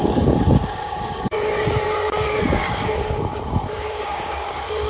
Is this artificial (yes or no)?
yes